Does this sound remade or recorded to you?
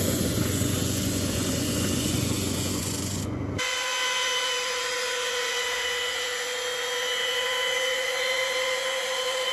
remade